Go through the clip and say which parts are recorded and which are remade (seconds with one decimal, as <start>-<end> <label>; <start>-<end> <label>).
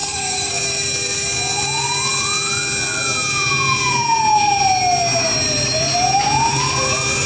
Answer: 0.0-0.5 remade; 0.5-7.3 recorded